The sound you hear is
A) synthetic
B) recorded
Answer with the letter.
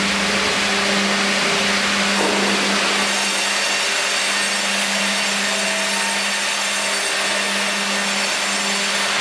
B